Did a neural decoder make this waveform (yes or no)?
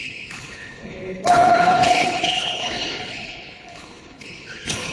yes